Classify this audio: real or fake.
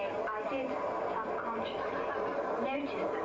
real